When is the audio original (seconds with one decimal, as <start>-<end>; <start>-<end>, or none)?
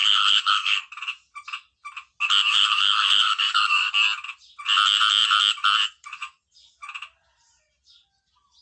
0.8-2.5; 3.9-8.6